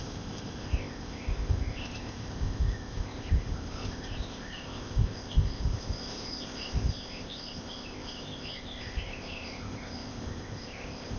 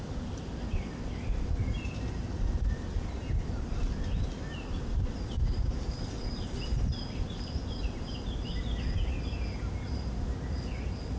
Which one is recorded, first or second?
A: second